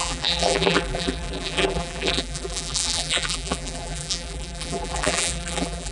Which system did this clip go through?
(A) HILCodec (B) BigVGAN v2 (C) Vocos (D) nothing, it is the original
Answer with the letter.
B